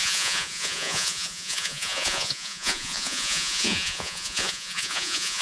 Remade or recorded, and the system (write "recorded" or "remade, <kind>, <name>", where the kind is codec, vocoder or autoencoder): remade, vocoder, Vocos